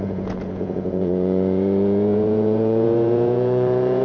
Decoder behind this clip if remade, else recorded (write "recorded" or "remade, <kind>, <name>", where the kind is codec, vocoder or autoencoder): remade, vocoder, Vocos